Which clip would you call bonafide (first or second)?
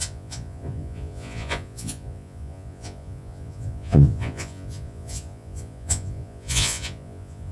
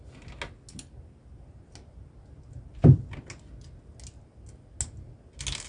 second